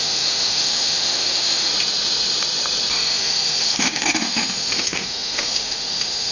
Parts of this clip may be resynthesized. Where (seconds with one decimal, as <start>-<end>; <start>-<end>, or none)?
0.0-1.7; 2.9-6.3

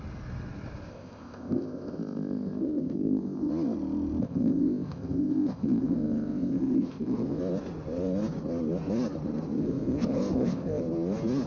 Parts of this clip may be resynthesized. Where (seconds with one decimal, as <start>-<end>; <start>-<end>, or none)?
0.9-3.5; 4.2-7.4; 9.6-10.8

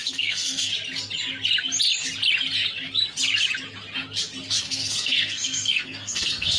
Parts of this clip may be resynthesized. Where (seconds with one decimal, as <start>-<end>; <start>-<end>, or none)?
0.0-0.7; 4.6-6.6